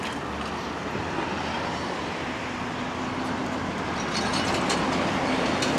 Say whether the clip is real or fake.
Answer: real